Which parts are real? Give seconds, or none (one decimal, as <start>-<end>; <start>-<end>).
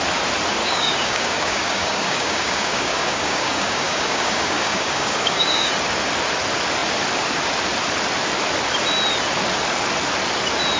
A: 0.0-0.6; 5.7-10.8